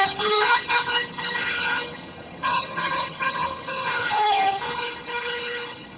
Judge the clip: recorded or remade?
remade